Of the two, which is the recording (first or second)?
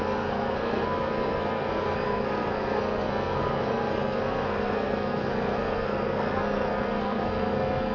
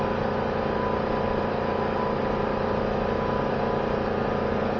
second